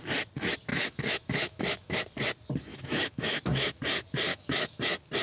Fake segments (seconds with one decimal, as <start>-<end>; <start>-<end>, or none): 0.7-2.0; 2.7-3.8; 4.3-4.8